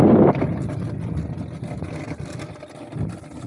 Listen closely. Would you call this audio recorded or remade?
recorded